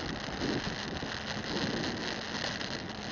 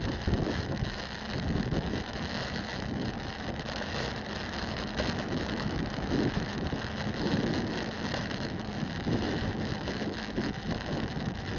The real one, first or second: first